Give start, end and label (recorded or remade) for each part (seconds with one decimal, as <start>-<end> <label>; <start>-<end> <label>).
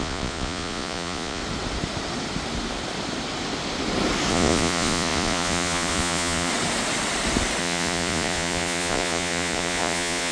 0.0-1.4 remade; 1.4-4.3 recorded; 4.3-6.5 remade; 6.5-7.6 recorded; 7.6-10.3 remade